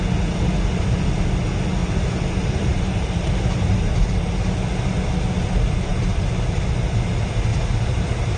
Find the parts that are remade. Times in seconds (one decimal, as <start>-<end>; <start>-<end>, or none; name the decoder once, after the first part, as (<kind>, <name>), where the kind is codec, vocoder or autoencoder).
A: 1.8-4.3 (vocoder, BigVGAN v2); 7.5-8.4